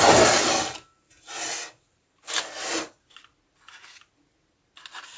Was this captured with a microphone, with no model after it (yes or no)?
yes